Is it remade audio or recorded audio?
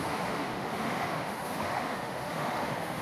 remade